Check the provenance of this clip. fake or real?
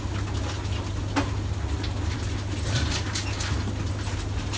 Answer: real